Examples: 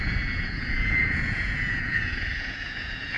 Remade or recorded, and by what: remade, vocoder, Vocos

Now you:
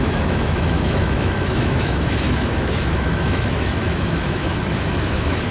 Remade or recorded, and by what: remade, autoencoder, DAC-VAE